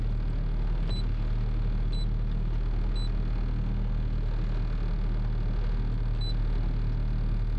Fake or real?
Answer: real